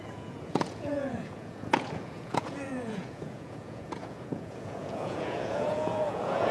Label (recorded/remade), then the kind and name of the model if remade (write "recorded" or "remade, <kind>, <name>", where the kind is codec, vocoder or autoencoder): remade, vocoder, Vocos